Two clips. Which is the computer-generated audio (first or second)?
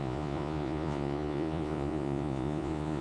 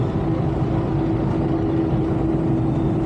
first